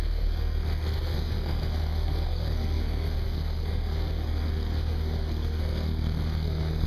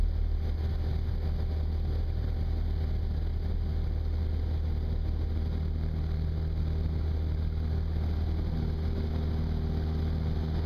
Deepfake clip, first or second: first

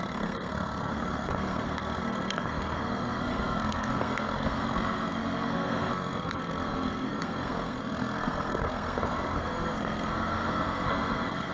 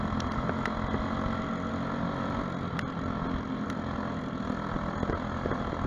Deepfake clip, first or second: first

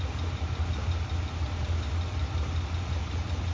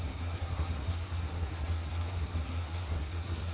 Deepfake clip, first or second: second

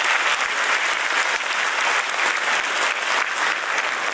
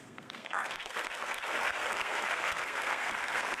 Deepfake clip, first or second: second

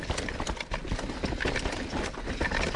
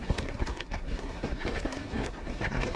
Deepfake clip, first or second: second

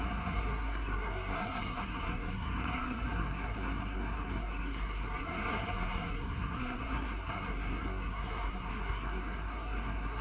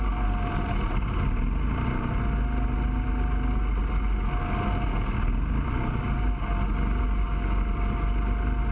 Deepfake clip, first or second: first